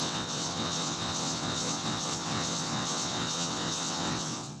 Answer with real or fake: fake